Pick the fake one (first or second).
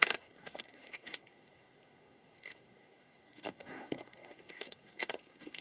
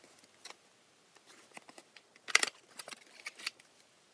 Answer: first